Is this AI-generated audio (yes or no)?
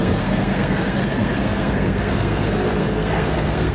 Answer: yes